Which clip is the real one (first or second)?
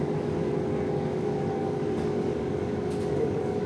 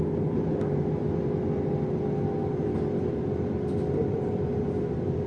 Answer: second